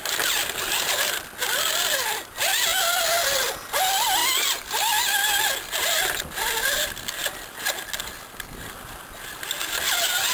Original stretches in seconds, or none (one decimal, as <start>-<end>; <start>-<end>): 0.0-10.3